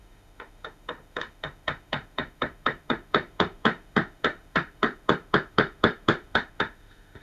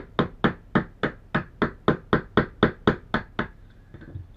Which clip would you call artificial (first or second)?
first